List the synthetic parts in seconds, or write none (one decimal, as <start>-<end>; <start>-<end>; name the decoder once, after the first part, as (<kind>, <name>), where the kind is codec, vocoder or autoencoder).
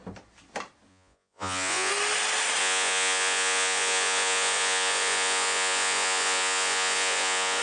0.9-1.9 (vocoder, Vocos); 2.6-7.6